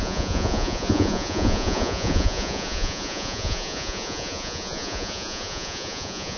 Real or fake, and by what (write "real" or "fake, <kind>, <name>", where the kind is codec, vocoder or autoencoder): fake, vocoder, Vocos